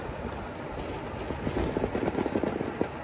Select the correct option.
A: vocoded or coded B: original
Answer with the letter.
B